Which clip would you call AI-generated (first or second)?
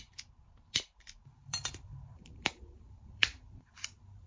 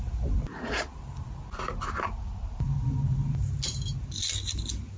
first